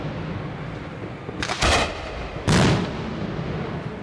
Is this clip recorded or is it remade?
recorded